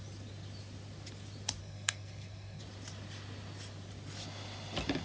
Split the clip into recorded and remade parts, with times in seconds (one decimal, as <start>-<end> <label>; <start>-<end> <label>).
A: 0.0-1.6 recorded; 1.6-2.6 remade; 2.6-5.0 recorded